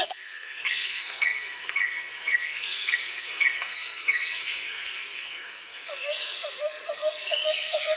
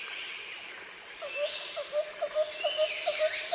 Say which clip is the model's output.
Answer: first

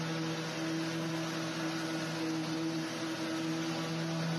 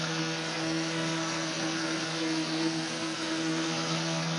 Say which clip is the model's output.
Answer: second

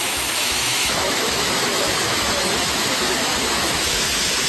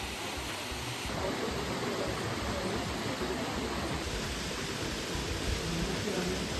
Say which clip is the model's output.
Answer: first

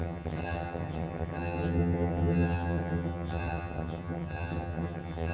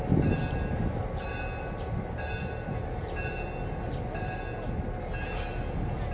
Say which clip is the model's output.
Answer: first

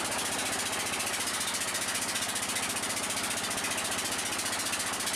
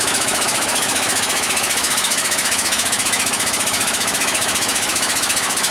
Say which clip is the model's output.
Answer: second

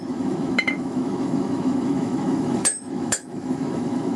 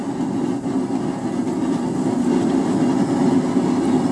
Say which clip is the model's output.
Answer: first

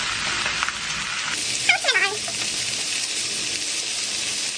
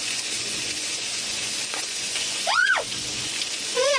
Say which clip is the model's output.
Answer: second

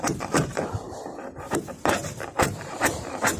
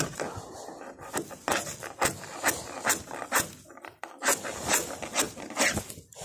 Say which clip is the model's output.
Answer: first